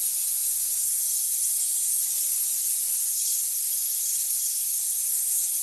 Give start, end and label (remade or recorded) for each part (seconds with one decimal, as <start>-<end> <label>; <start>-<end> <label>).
0.0-0.8 recorded; 0.8-2.0 remade; 2.0-3.1 recorded; 3.1-5.6 remade